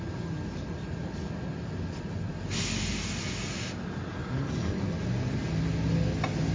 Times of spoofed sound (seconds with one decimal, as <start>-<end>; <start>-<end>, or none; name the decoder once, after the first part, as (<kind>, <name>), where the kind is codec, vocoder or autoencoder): none